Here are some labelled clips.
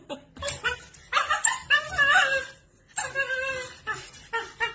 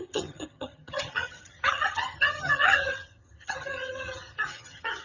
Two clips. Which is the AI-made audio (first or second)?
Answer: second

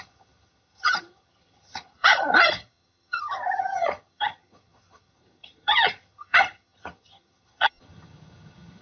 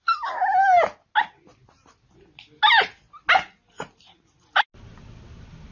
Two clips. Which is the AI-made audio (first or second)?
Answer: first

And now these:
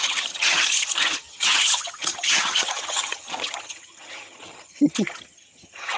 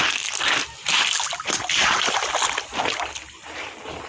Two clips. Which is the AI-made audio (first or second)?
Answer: first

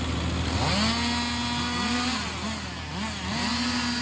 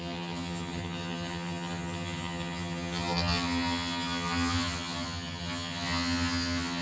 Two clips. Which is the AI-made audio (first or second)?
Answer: second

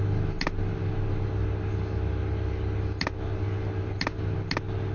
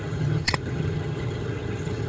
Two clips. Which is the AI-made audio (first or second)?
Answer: second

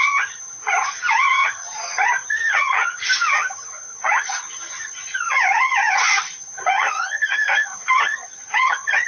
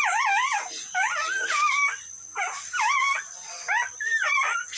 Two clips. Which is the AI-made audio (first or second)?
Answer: first